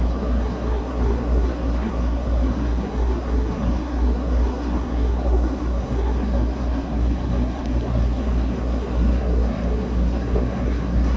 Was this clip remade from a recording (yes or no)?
yes